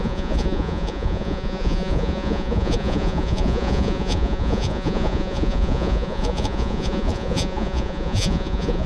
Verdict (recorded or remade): remade